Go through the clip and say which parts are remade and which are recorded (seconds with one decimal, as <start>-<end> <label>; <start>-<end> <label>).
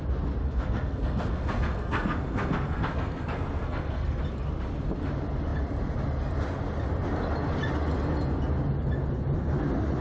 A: 0.0-0.4 recorded; 0.4-4.2 remade; 4.2-10.0 recorded